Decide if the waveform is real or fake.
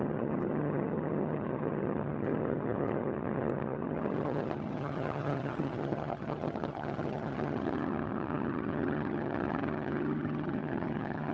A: fake